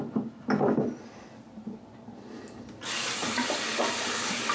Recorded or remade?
recorded